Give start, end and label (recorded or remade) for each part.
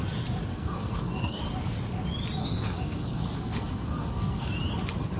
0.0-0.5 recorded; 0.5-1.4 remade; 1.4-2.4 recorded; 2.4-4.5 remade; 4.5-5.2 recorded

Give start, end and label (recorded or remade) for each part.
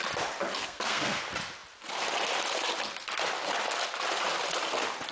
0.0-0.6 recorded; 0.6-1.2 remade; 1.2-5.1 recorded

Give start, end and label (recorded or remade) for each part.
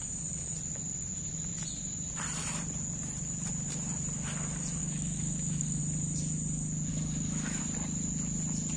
0.0-4.8 recorded; 4.8-5.8 remade; 5.8-6.9 recorded; 6.9-7.6 remade; 7.6-8.8 recorded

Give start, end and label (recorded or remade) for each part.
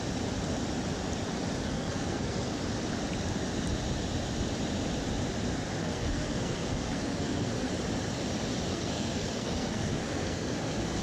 0.0-1.6 recorded; 1.6-2.6 remade; 2.6-5.8 recorded; 5.8-7.7 remade; 7.7-8.7 recorded; 8.7-11.0 remade